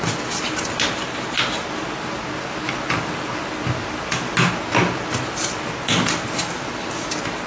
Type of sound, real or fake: real